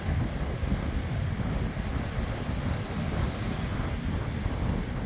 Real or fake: real